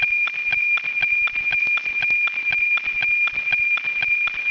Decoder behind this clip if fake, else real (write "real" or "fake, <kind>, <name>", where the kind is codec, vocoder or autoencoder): fake, vocoder, BigVGAN v2